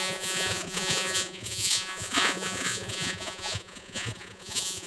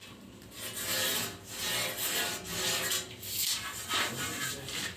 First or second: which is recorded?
second